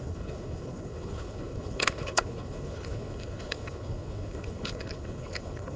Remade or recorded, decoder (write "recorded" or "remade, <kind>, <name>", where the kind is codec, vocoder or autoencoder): remade, codec, HILCodec